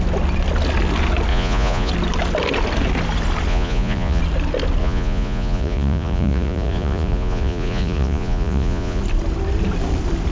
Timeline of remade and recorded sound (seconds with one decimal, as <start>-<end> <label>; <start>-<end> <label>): 0.0-1.3 recorded; 1.3-1.9 remade; 1.9-3.5 recorded; 3.5-4.2 remade; 4.2-4.8 recorded; 4.8-9.0 remade; 9.0-10.3 recorded